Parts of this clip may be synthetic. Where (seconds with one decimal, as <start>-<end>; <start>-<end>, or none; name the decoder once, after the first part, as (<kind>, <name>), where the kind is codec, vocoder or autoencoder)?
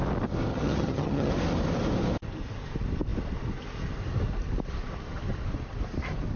0.5-1.3 (vocoder, HiFi-GAN)